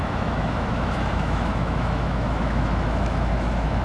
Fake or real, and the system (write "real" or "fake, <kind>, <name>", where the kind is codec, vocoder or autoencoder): fake, autoencoder, DAC-VAE